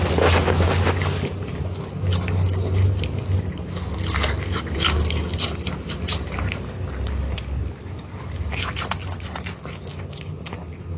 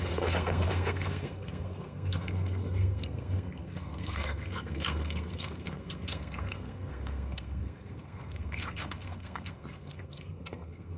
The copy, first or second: second